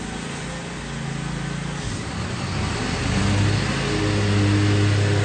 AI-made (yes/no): no